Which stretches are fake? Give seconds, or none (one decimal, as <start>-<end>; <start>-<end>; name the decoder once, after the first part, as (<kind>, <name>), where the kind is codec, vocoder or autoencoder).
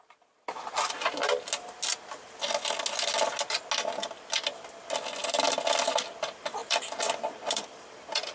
5.2-6.1 (vocoder, BigVGAN v2); 6.6-7.9